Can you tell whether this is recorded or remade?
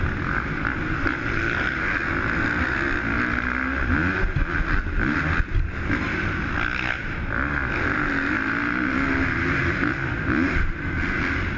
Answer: recorded